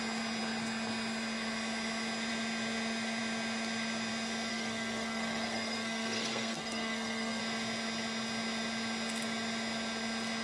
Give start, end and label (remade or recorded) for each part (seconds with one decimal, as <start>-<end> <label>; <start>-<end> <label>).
0.0-4.5 recorded; 4.5-7.4 remade; 7.4-10.4 recorded